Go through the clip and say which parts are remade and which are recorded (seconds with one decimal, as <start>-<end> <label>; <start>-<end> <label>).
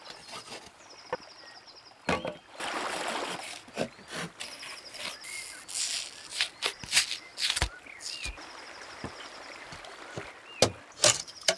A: 0.0-11.6 recorded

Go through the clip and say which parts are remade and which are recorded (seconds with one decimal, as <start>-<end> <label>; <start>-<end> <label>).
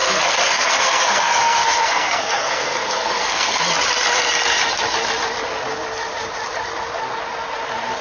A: 0.0-3.6 remade; 3.6-8.0 recorded